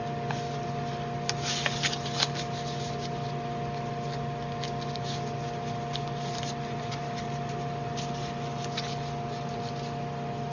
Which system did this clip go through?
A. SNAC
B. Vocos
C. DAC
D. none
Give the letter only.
D